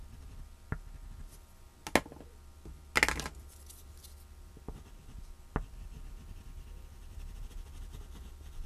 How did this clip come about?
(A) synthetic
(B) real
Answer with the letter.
B